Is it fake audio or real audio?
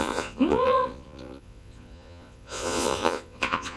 fake